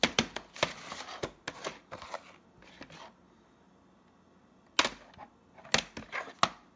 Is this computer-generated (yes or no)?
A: no